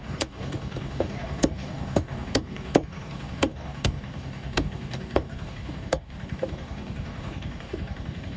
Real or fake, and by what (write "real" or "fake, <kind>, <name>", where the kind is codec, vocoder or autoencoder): fake, codec, DAC